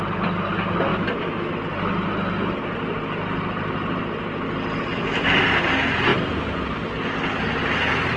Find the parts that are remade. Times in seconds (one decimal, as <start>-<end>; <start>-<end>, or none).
0.9-1.5; 4.9-5.4